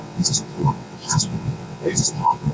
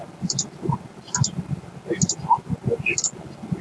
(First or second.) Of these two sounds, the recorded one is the second